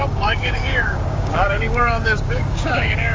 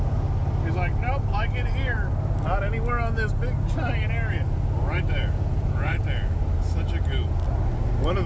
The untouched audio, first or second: second